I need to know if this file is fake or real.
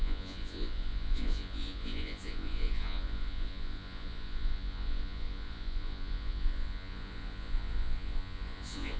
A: fake